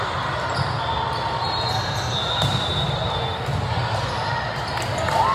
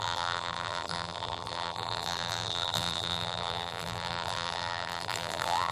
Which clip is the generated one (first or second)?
second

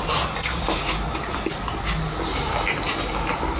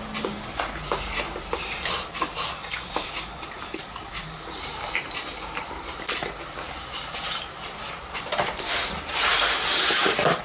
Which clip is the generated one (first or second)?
second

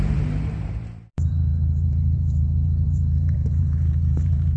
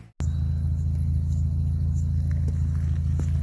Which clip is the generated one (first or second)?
first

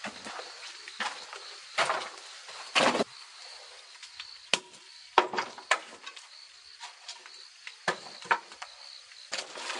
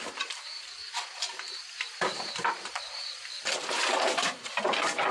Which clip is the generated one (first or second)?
second